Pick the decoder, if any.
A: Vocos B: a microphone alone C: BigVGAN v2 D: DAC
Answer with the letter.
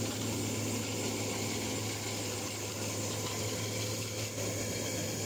B